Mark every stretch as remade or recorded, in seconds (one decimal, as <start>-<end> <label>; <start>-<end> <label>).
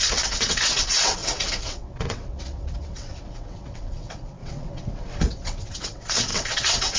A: 0.0-7.0 remade